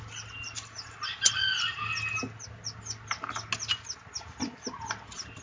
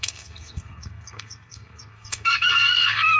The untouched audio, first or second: first